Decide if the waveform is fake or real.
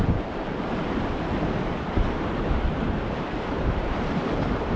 fake